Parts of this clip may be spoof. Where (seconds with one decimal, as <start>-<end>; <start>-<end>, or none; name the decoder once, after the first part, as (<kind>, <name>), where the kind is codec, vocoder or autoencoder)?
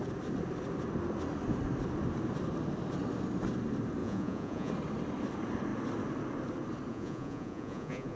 4.0-4.7 (vocoder, Vocos); 6.9-8.2